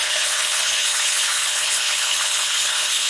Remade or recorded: remade